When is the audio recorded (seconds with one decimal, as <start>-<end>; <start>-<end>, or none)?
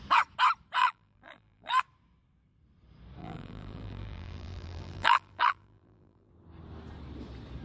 0.0-0.8; 1.8-3.2; 6.3-7.6